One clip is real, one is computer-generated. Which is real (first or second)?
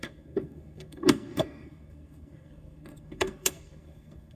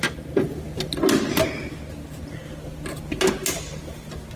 second